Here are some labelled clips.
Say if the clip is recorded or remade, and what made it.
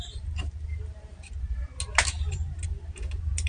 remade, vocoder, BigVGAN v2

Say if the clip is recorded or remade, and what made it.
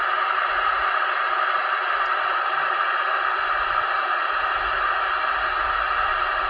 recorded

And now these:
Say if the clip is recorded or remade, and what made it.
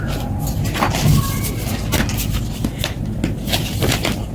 recorded